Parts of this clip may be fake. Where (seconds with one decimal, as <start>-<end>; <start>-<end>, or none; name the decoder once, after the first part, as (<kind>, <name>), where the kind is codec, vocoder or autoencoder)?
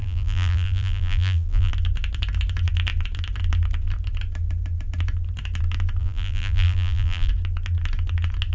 0.0-1.7 (vocoder, BigVGAN v2); 6.0-7.3